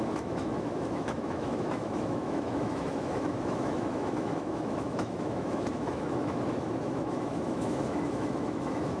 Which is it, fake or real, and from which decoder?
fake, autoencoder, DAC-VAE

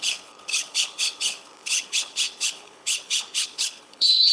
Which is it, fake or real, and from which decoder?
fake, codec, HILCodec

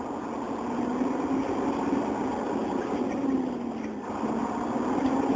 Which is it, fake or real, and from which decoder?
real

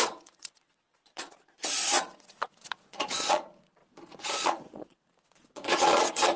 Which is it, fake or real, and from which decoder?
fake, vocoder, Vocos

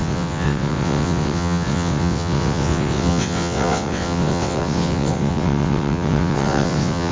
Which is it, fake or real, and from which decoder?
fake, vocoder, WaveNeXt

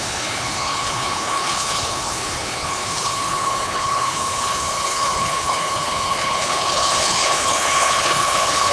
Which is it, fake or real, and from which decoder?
fake, codec, HILCodec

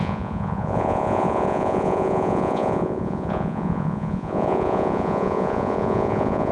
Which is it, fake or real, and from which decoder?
fake, vocoder, Vocos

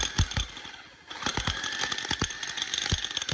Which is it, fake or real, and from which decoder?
real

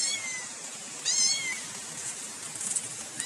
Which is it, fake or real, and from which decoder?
real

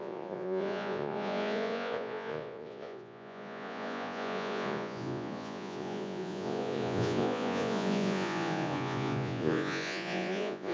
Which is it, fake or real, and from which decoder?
fake, vocoder, Vocos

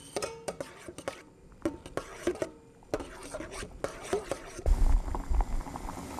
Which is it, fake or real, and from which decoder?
real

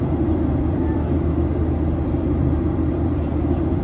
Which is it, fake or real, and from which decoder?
fake, vocoder, BigVGAN v2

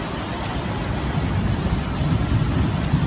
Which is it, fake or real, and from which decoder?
real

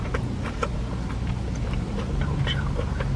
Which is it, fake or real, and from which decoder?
real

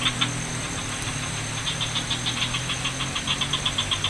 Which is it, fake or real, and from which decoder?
real